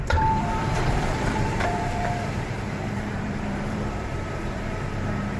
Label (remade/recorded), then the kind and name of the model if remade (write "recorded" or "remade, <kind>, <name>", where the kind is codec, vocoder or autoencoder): remade, vocoder, BigVGAN v2